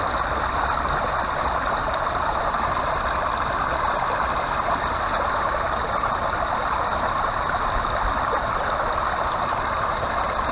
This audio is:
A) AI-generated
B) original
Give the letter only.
B